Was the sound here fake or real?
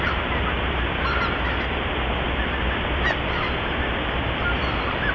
real